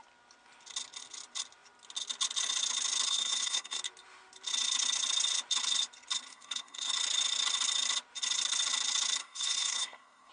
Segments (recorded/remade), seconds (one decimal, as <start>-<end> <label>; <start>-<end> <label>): 0.0-3.1 recorded; 3.1-3.8 remade; 3.8-6.3 recorded; 6.3-6.9 remade; 6.9-9.2 recorded; 9.2-10.3 remade